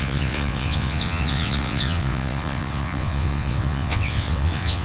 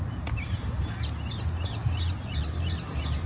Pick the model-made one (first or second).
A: first